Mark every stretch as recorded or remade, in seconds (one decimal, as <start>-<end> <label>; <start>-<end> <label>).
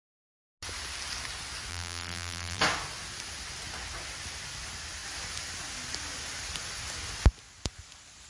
0.0-1.7 recorded; 1.7-2.6 remade; 2.6-8.3 recorded